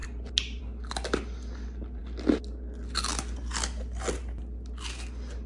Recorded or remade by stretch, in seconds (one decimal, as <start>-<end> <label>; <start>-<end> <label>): 0.0-5.5 recorded